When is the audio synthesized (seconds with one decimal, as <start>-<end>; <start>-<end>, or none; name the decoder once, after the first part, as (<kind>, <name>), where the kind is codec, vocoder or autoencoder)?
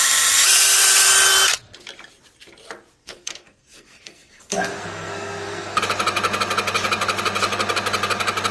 3.0-5.8 (codec, SNAC)